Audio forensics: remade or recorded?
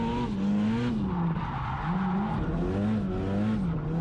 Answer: recorded